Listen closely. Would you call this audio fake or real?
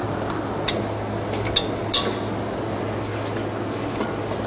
real